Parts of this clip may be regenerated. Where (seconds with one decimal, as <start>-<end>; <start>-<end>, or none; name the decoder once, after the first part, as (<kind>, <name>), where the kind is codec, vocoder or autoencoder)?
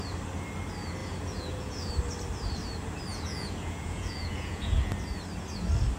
1.0-1.9 (vocoder, Vocos); 3.1-4.8